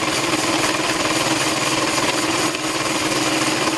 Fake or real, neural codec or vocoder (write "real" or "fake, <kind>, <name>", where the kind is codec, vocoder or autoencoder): real